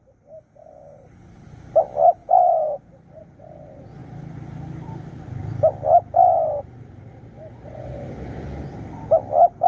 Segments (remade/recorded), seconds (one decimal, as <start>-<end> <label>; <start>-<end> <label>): 0.0-9.7 recorded